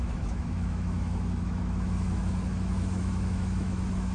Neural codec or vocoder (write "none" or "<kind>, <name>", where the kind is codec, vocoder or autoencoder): autoencoder, DAC-VAE